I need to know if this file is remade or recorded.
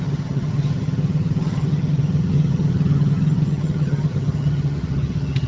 remade